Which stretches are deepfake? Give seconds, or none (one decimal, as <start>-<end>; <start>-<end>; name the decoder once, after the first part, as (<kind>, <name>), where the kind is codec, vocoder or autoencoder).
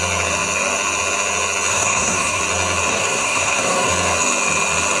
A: 1.7-2.4 (codec, SNAC); 2.9-3.9